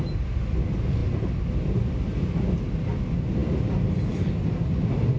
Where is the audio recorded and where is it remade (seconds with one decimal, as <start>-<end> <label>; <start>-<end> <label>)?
0.0-5.2 recorded